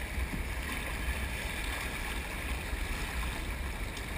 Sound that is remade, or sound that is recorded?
recorded